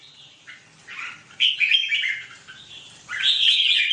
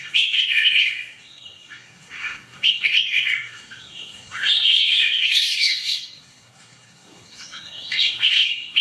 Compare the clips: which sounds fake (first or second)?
second